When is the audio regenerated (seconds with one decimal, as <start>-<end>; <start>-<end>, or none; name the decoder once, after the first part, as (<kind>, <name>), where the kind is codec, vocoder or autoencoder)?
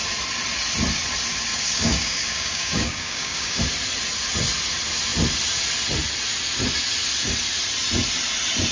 1.5-3.6 (codec, DAC)